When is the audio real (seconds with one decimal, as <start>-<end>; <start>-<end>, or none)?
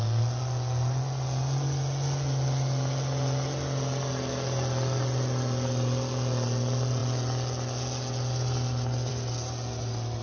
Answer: 0.0-10.2